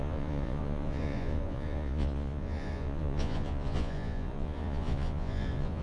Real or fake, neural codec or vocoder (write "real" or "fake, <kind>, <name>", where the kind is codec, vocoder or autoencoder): fake, vocoder, Vocos